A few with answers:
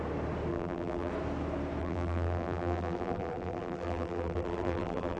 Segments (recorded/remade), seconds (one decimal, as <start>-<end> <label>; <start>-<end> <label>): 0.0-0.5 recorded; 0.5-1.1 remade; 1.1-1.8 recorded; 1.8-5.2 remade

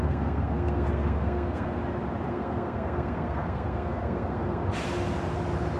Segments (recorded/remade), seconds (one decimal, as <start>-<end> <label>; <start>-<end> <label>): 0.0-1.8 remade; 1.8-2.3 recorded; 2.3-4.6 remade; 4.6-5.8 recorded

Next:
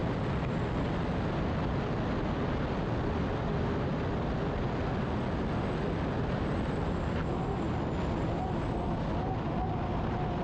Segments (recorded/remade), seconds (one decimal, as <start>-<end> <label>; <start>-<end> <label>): 0.0-10.4 recorded

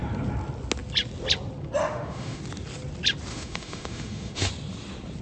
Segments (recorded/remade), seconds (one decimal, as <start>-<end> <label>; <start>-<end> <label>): 0.0-1.8 recorded; 1.8-2.4 remade; 2.4-3.3 recorded; 3.3-4.5 remade; 4.5-5.2 recorded

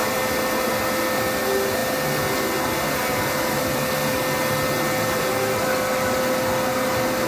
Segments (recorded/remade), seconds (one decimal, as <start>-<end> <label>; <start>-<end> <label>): 0.0-7.3 recorded

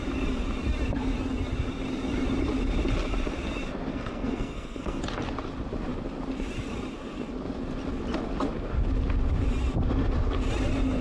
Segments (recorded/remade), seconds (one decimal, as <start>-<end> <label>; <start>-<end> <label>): 0.0-3.9 recorded; 3.9-5.0 remade; 5.0-11.0 recorded

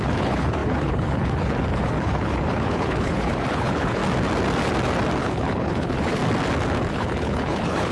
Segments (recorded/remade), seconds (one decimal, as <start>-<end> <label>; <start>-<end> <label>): 0.0-4.0 remade; 4.0-5.2 recorded; 5.2-6.2 remade; 6.2-6.9 recorded; 6.9-7.9 remade

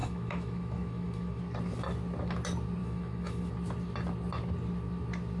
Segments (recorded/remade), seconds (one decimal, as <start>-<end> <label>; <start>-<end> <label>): 0.0-1.4 remade; 1.4-2.8 recorded; 2.8-3.5 remade; 3.5-5.4 recorded